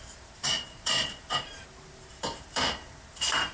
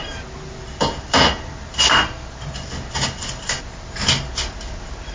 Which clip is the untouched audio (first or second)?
second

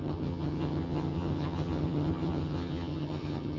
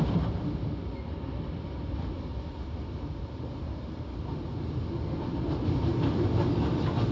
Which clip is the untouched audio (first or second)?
second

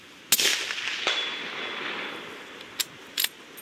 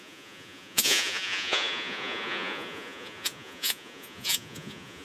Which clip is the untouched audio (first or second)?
first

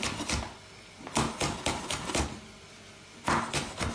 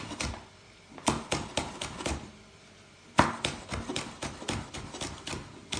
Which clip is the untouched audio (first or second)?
first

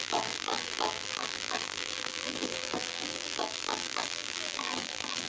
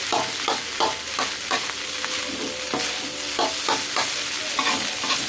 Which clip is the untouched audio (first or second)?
second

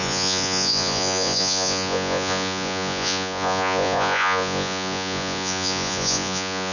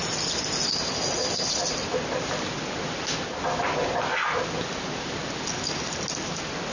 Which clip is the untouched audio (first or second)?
second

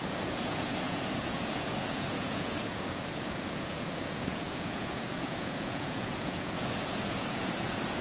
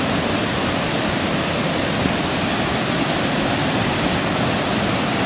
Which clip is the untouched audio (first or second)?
second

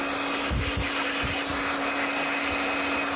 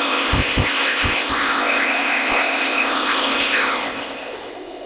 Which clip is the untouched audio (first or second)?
first